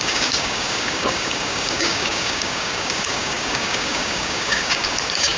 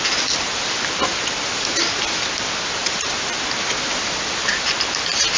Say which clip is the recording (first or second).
second